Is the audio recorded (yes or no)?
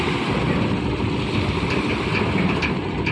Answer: yes